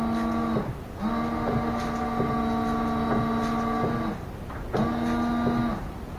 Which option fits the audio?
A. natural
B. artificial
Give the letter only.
A